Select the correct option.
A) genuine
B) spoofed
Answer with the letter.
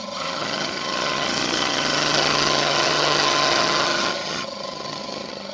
B